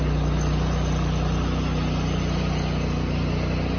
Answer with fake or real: real